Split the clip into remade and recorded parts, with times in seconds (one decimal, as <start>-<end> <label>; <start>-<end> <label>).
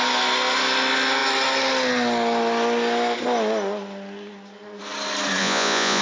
0.0-5.4 recorded; 5.4-6.0 remade